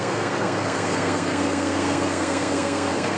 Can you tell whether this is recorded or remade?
remade